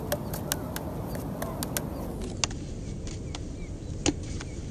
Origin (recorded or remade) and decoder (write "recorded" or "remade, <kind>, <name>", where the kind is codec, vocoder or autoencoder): recorded